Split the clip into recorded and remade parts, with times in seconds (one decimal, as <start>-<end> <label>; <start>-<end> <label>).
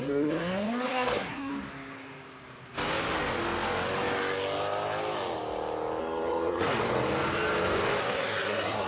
0.0-1.5 remade; 1.5-6.0 recorded; 6.0-6.8 remade; 6.8-8.0 recorded; 8.0-8.9 remade